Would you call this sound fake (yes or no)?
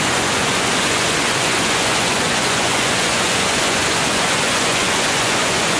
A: yes